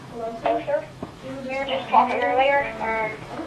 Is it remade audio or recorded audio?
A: remade